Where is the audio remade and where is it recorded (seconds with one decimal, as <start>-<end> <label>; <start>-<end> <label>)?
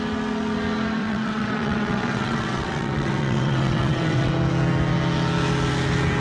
0.0-1.0 recorded; 1.0-4.3 remade; 4.3-6.2 recorded